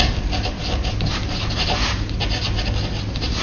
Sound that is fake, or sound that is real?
real